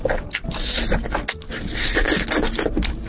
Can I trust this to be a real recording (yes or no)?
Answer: yes